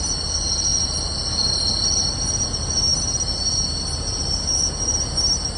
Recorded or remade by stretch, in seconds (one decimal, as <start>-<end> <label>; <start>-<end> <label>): 0.0-0.7 recorded; 0.7-2.1 remade; 2.1-5.6 recorded